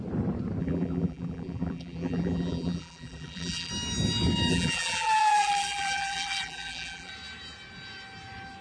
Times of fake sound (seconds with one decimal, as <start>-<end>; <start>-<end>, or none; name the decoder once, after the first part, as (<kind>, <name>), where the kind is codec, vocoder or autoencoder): 0.6-3.7 (vocoder, BigVGAN v2); 4.5-7.1